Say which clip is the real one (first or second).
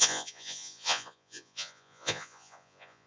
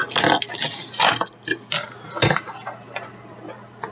second